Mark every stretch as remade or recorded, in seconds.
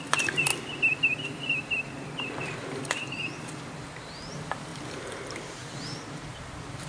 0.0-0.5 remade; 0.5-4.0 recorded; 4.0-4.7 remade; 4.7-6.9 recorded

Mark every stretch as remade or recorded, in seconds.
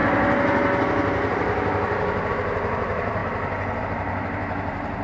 0.0-2.3 recorded; 2.3-3.2 remade; 3.2-3.8 recorded; 3.8-5.0 remade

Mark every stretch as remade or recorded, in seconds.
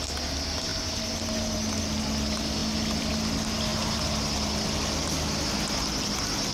0.0-6.5 recorded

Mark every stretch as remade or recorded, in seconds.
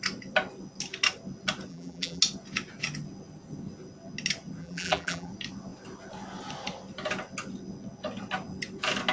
0.0-1.7 recorded; 1.7-2.2 remade; 2.2-4.6 recorded; 4.6-5.3 remade; 5.3-9.1 recorded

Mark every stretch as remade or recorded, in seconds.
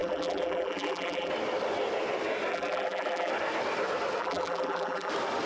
0.0-1.3 remade; 1.3-2.5 recorded; 2.5-3.3 remade; 3.3-4.2 recorded; 4.2-5.1 remade; 5.1-5.5 recorded